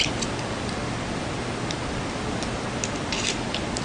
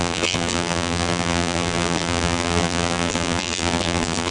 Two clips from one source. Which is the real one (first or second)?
first